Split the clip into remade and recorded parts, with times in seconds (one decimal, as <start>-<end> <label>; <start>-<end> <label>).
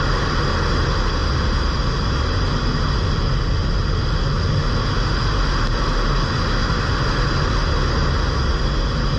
0.0-9.2 recorded